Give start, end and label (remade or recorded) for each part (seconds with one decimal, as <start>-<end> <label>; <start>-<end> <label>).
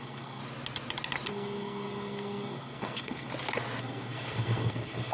0.0-0.4 remade; 0.4-1.3 recorded; 1.3-3.3 remade; 3.3-3.8 recorded; 3.8-5.1 remade